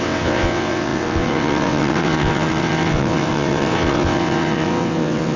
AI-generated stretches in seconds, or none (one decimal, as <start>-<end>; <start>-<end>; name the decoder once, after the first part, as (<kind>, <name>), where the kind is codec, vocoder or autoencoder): 0.0-5.4 (vocoder, WaveNeXt)